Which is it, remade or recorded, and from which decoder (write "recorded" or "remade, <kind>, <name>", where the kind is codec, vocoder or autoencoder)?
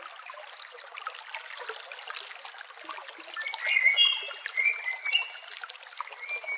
recorded